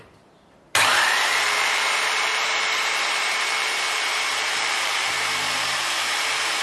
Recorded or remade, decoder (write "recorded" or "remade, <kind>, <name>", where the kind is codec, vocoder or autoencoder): remade, vocoder, BigVGAN v2